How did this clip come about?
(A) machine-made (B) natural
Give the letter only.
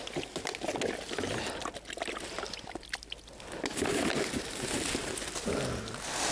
B